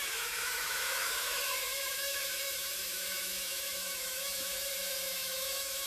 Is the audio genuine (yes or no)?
no